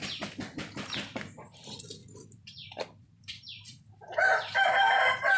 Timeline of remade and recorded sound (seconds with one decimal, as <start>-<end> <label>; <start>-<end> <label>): 0.0-2.0 recorded; 2.0-4.9 remade; 4.9-5.4 recorded